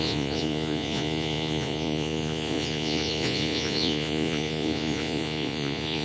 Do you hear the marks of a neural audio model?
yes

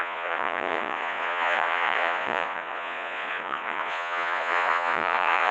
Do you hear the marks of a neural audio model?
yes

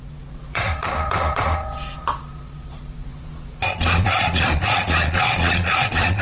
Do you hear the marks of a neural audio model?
yes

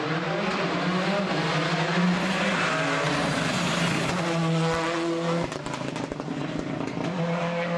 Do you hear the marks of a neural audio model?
no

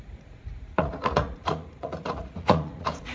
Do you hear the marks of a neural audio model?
yes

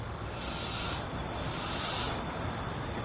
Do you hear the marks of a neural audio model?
no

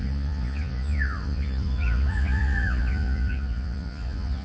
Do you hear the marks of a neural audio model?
yes